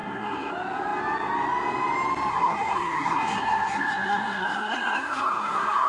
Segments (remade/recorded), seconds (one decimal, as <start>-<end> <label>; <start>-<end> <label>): 0.0-0.5 remade; 0.5-2.3 recorded; 2.3-5.9 remade